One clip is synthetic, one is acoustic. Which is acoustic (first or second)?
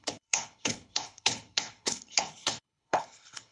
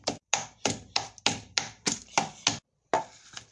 second